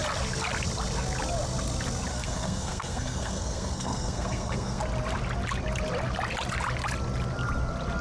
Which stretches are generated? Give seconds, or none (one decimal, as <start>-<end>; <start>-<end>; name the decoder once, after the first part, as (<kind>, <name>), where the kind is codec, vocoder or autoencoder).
2.1-4.8 (codec, SNAC)